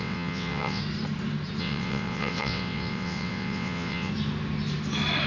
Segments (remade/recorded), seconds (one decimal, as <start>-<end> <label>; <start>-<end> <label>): 0.0-0.8 remade; 0.8-1.6 recorded; 1.6-4.1 remade; 4.1-5.3 recorded